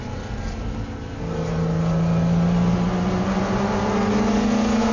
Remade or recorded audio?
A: recorded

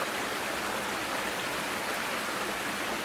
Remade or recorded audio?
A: recorded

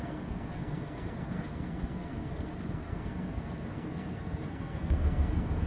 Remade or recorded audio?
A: remade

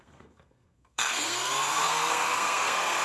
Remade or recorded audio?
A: remade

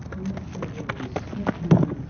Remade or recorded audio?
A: recorded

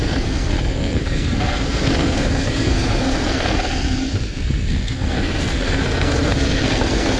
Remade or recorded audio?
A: remade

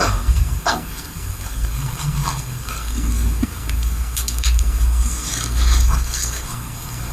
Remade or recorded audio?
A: remade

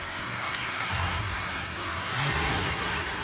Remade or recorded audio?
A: remade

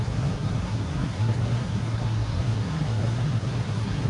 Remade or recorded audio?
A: remade